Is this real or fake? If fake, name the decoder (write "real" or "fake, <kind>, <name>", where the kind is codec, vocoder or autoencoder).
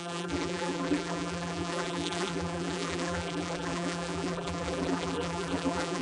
fake, vocoder, BigVGAN v2